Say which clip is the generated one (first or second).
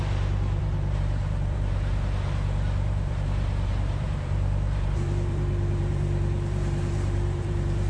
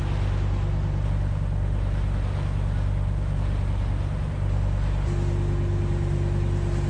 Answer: first